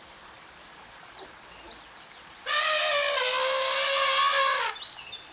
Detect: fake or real real